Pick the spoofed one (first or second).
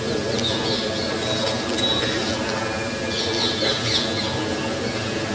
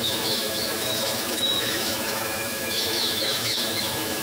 second